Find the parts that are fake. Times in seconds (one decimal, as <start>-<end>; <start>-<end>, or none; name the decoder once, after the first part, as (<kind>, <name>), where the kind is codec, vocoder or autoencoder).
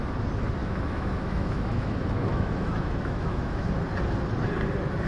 0.6-3.7 (autoencoder, DAC-VAE)